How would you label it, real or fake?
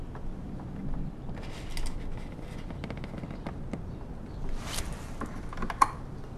real